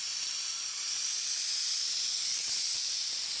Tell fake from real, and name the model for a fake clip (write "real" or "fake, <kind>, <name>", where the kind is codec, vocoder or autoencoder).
real